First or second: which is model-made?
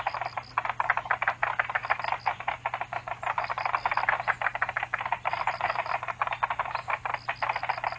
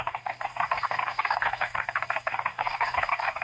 second